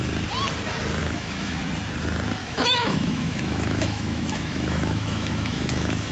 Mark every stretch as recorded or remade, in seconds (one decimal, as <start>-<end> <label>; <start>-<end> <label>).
0.0-1.0 recorded; 1.0-1.6 remade; 1.6-2.4 recorded; 2.4-6.1 remade